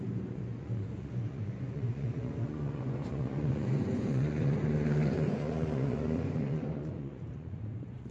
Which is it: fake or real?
fake